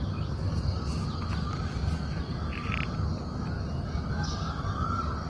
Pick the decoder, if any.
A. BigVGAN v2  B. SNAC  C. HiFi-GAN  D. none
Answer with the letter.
D